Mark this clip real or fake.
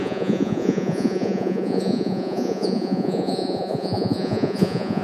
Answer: fake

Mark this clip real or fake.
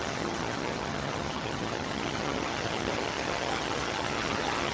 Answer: fake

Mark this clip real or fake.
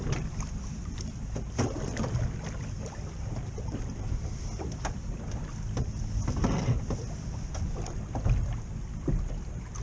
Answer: fake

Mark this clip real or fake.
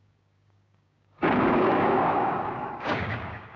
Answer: fake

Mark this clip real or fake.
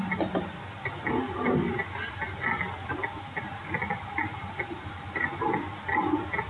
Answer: real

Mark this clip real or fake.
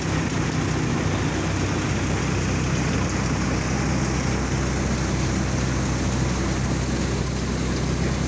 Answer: real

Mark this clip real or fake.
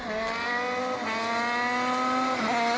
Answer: real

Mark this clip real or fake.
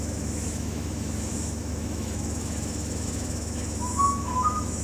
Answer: fake